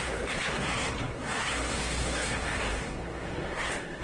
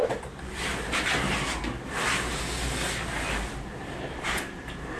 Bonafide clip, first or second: second